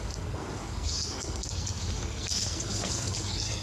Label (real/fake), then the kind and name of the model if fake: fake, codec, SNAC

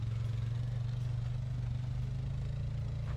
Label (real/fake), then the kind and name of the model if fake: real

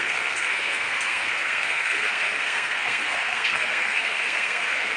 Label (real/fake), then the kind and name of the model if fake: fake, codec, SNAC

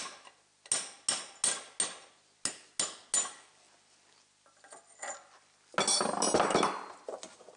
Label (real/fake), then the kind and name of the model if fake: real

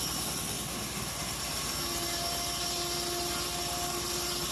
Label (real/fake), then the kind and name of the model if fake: real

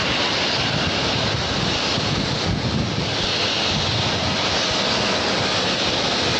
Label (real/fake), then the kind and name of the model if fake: real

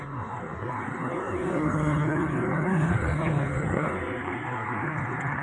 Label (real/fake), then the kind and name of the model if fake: fake, codec, SNAC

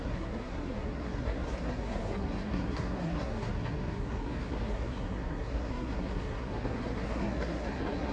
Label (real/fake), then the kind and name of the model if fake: fake, codec, SNAC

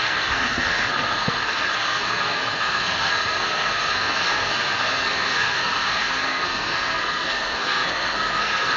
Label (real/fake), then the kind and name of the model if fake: fake, codec, SNAC